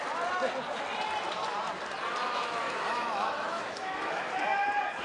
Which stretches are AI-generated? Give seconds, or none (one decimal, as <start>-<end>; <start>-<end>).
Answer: 2.2-4.3